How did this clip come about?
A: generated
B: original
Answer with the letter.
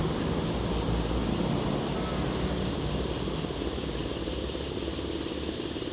B